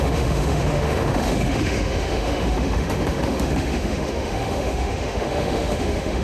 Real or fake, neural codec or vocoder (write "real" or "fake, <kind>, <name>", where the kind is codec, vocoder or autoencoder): fake, autoencoder, DAC-VAE